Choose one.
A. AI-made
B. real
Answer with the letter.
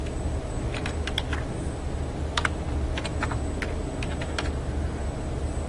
B